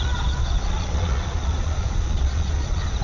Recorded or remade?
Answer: remade